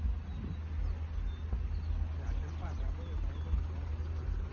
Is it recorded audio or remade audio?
recorded